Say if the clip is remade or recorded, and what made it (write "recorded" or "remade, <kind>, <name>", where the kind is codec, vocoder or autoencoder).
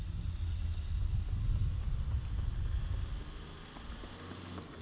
recorded